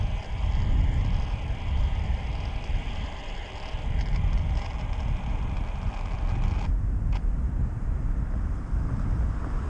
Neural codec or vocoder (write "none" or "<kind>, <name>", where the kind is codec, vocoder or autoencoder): none